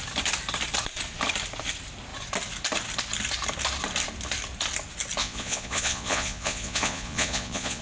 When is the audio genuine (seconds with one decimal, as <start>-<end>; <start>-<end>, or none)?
0.0-5.2